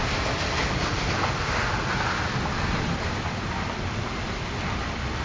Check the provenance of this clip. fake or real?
real